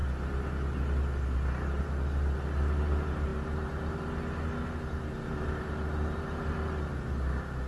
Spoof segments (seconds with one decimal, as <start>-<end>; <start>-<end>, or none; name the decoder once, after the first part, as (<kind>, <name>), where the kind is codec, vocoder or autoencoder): none